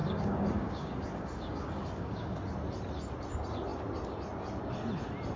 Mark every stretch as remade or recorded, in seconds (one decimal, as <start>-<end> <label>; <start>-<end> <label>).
0.0-2.4 remade; 2.4-5.4 recorded